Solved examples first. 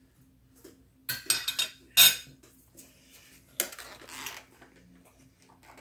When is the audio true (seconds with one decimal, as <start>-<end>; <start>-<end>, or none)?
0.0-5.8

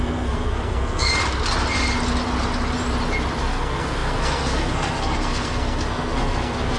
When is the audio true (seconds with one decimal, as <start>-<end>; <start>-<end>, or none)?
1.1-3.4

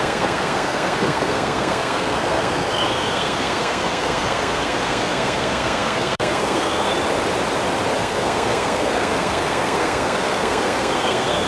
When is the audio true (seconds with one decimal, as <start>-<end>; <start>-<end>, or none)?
6.9-8.0

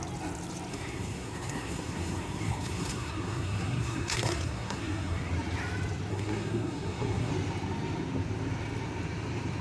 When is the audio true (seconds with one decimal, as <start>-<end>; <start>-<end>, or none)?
0.0-0.7; 5.3-6.1; 7.3-9.6

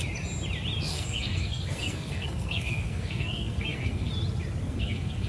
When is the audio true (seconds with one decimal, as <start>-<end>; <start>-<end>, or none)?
0.0-0.9; 4.1-4.6